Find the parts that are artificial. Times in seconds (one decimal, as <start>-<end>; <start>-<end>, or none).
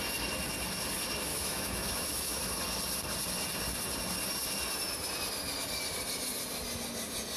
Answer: 1.3-2.4